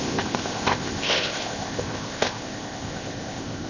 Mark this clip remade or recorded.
remade